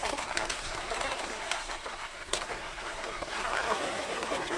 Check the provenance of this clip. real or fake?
fake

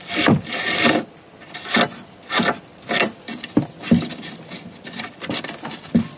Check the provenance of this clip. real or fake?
real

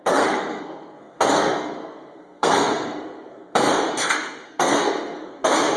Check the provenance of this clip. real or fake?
fake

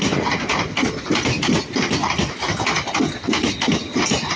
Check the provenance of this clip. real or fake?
real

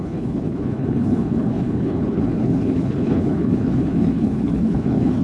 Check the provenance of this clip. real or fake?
fake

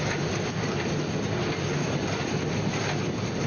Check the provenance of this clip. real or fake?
real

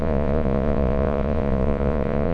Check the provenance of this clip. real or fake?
fake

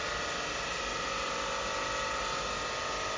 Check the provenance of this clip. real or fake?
real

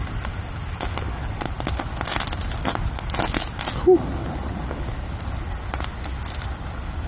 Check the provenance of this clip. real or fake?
real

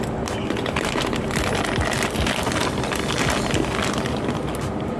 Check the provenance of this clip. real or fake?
real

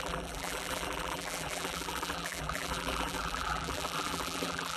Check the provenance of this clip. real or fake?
fake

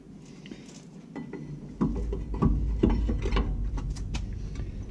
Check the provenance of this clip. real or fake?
real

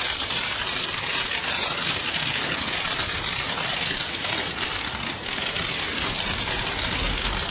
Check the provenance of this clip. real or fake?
real